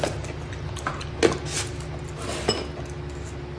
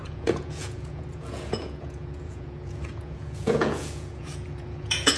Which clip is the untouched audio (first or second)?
first